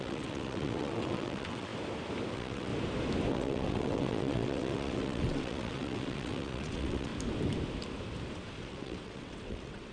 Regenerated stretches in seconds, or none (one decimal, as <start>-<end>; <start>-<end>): 0.0-1.7; 2.3-2.7; 3.3-7.1; 8.6-9.9